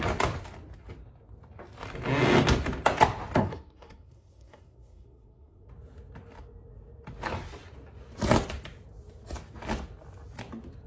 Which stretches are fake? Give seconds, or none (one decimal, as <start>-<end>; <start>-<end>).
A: 3.4-5.7

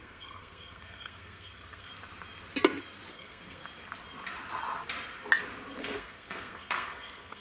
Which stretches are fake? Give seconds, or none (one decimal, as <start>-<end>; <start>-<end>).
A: 0.0-1.9; 3.1-3.6; 5.8-7.4